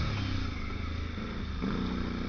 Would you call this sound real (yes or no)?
yes